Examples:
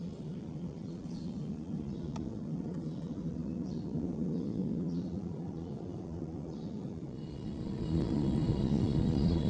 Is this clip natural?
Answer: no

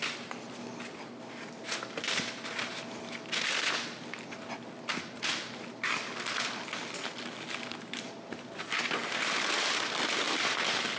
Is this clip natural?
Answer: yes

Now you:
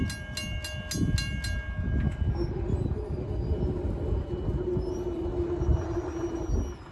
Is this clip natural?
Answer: yes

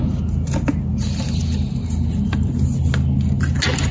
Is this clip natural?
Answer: yes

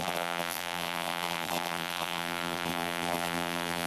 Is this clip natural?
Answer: no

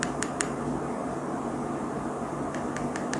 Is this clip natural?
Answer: yes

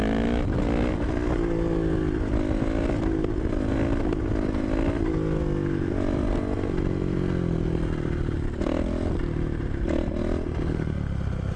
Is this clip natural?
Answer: yes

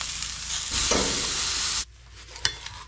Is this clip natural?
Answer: yes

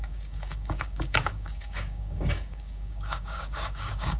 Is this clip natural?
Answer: no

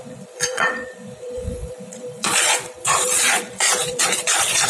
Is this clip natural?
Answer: no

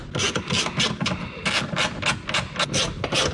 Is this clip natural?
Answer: yes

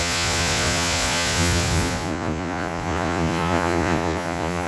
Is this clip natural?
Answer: no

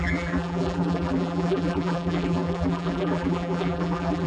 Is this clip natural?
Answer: no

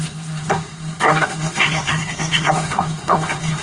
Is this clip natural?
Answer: no